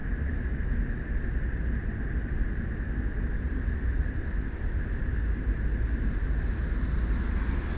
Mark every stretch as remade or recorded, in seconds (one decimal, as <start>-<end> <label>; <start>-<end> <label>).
0.0-7.8 recorded

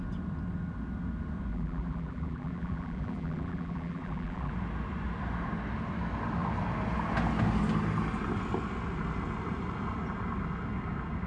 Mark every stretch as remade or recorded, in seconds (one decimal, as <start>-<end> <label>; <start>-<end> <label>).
0.0-1.5 recorded; 1.5-4.5 remade; 4.5-11.3 recorded

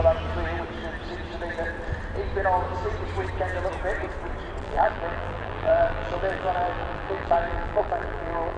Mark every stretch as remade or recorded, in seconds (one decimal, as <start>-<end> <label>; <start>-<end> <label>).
0.0-4.6 recorded; 4.6-8.6 remade

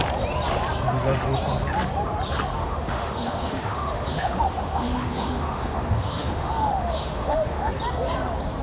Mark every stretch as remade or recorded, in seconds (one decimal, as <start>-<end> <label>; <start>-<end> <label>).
0.0-2.6 recorded; 2.6-7.7 remade; 7.7-8.6 recorded

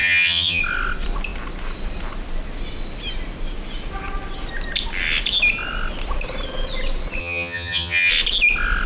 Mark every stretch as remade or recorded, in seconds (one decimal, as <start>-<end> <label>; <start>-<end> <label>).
0.0-0.6 remade; 0.6-7.2 recorded; 7.2-8.1 remade; 8.1-8.9 recorded

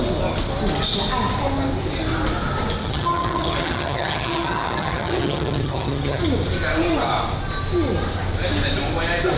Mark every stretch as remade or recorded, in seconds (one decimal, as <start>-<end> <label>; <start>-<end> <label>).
0.0-2.8 recorded; 2.8-6.2 remade; 6.2-9.4 recorded

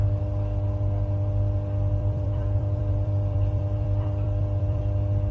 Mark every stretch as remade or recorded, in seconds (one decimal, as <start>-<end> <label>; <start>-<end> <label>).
0.0-2.0 recorded; 2.0-4.8 remade; 4.8-5.3 recorded

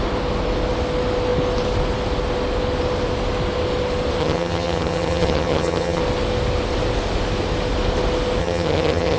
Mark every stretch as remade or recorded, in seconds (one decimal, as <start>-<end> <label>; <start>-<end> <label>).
0.0-4.2 recorded; 4.2-6.0 remade; 6.0-8.4 recorded; 8.4-9.2 remade